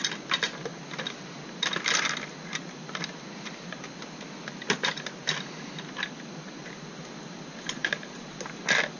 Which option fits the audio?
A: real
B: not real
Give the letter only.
A